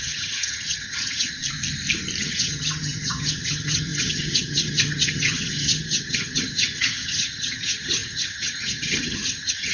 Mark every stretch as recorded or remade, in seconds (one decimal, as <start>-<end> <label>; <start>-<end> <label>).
0.0-1.4 remade; 1.4-2.2 recorded; 2.2-9.7 remade